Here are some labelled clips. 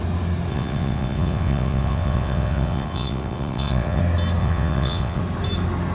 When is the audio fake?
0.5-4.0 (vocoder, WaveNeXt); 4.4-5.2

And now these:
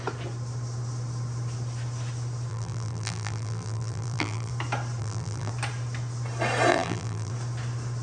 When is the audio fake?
2.5-4.5 (vocoder, BigVGAN v2); 5.0-5.5; 6.7-7.3

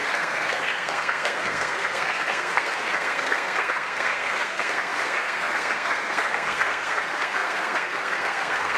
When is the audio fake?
0.0-8.8 (codec, SNAC)